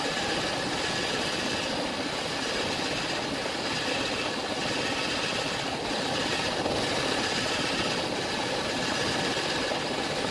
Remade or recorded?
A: recorded